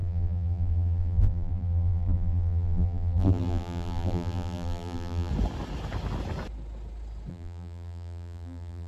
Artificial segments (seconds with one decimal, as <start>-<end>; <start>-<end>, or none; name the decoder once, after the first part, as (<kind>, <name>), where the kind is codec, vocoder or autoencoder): 0.0-5.3 (vocoder, BigVGAN v2); 7.3-8.9